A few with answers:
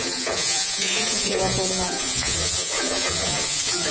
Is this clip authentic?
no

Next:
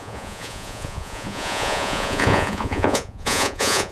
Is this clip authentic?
no